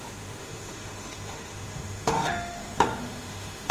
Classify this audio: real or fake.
fake